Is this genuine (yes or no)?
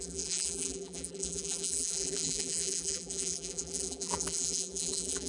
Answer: no